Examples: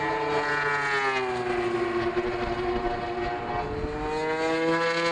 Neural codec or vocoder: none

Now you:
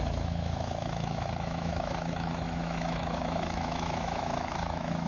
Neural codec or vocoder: autoencoder, DAC-VAE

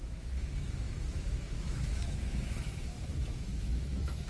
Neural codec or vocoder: autoencoder, DAC-VAE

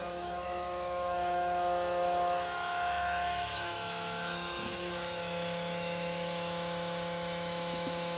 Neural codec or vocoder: autoencoder, DAC-VAE